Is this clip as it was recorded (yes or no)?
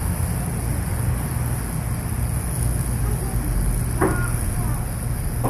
yes